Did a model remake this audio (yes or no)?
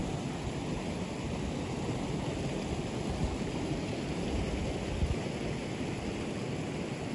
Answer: no